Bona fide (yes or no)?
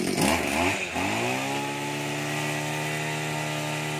yes